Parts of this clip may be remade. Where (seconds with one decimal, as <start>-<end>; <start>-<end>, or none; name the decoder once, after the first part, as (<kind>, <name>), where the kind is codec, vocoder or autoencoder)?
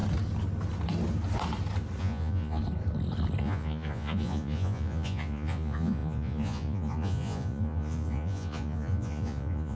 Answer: 2.0-2.6 (vocoder, Vocos); 3.4-9.8